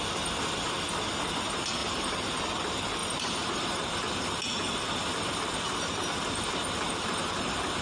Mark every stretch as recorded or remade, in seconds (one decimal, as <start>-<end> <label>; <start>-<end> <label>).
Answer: 0.0-1.8 recorded; 1.8-2.4 remade; 2.4-3.0 recorded; 3.0-3.9 remade; 3.9-7.8 recorded